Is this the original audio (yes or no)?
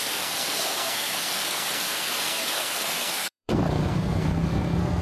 no